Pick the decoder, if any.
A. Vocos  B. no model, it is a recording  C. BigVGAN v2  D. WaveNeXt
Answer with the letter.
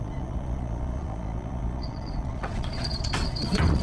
A